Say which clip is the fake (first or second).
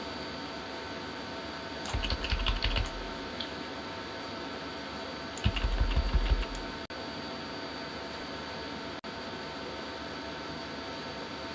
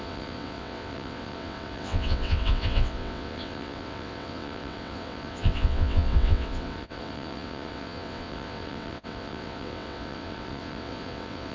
second